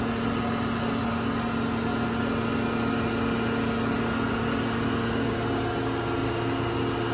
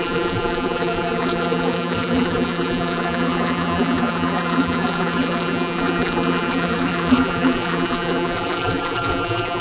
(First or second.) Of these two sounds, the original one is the first